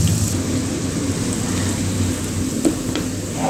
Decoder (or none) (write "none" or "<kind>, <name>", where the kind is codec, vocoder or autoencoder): none